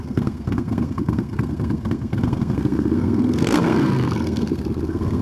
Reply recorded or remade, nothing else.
remade